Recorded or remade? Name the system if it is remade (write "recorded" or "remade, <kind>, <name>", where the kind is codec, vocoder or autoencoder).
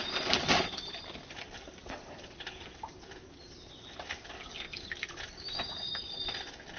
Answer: recorded